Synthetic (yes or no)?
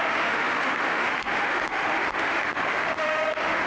yes